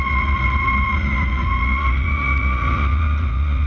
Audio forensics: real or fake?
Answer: fake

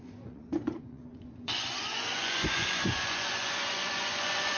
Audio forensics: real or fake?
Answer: fake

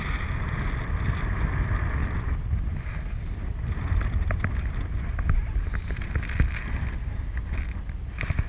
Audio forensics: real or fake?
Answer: real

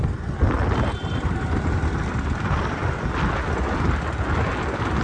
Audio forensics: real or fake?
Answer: real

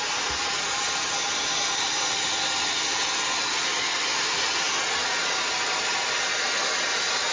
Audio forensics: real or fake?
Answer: real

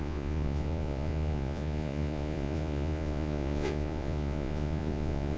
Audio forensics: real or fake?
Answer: fake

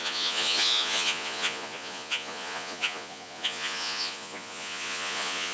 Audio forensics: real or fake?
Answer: fake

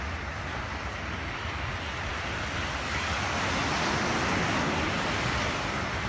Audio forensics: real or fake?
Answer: real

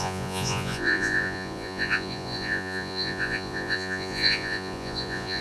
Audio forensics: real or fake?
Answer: fake